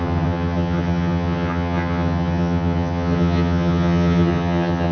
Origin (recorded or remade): remade